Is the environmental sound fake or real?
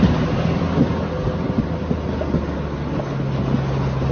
real